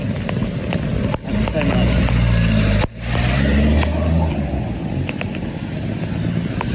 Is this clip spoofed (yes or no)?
no